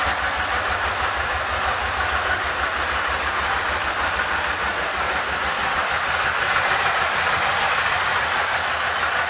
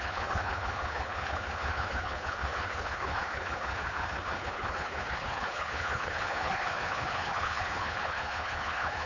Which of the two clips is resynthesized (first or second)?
second